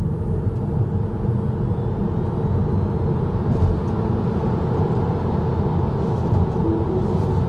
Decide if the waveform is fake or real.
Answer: real